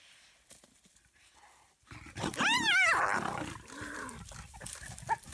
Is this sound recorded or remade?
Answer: recorded